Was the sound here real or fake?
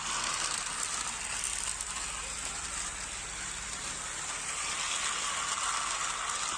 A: real